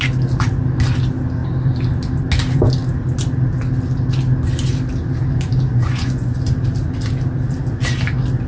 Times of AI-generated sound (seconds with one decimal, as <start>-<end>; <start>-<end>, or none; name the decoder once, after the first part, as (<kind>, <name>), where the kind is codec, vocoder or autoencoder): 5.7-6.4 (vocoder, Vocos)